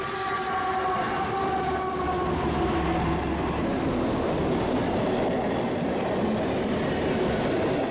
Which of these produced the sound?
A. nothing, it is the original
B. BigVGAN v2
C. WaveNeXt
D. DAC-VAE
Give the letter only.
A